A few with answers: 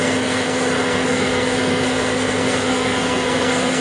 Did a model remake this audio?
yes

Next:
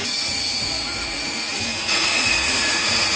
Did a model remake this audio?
yes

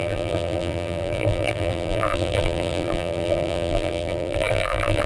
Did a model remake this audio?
yes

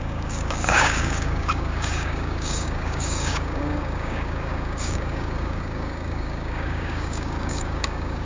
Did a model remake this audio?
yes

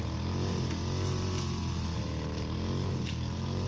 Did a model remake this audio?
no